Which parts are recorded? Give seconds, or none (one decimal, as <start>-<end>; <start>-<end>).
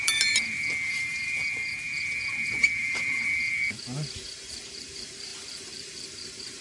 none